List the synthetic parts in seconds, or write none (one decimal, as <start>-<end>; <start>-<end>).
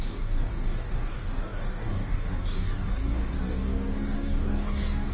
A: 0.0-5.1